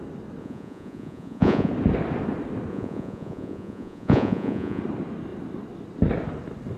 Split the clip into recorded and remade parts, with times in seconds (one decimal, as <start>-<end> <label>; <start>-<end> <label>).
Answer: 0.0-0.4 recorded; 0.4-1.7 remade; 1.7-2.7 recorded; 2.7-4.8 remade; 4.8-6.8 recorded